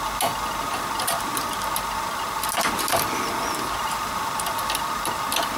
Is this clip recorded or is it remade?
recorded